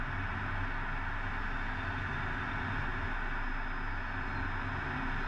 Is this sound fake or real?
real